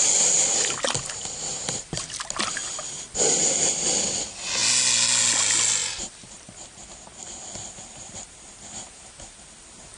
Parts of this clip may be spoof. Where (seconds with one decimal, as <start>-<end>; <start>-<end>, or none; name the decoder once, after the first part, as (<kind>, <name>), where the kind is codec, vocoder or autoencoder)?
5.8-9.2 (vocoder, BigVGAN v2)